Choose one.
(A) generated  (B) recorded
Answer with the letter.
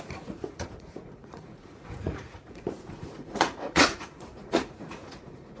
A